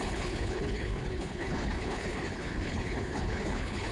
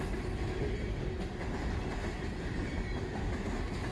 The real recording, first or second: second